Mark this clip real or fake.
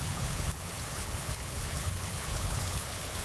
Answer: fake